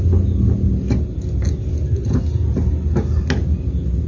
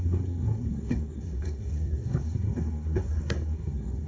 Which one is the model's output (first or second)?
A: second